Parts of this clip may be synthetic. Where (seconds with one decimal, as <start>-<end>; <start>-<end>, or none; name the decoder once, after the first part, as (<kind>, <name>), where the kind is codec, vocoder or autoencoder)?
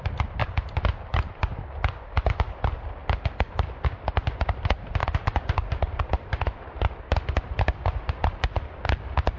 0.4-1.8 (vocoder, BigVGAN v2); 5.0-6.9